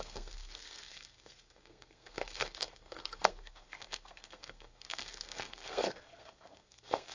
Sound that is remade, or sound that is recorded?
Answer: remade